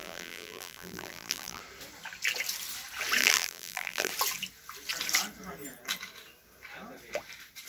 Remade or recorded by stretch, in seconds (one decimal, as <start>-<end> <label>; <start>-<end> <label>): 0.0-1.6 remade; 1.6-3.2 recorded; 3.2-4.1 remade; 4.1-7.7 recorded